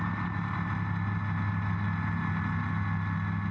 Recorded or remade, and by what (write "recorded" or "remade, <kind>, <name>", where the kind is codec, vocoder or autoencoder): recorded